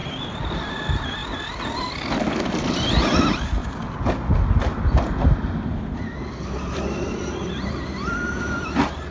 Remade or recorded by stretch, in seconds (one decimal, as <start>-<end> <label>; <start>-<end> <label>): 0.0-9.1 recorded